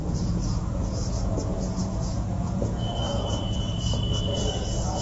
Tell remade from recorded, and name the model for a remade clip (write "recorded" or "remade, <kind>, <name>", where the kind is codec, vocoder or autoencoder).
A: remade, vocoder, Vocos